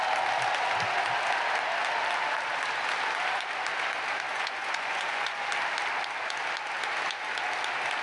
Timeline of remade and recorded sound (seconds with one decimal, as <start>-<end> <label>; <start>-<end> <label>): 0.0-4.3 recorded; 4.3-5.5 remade; 5.5-8.0 recorded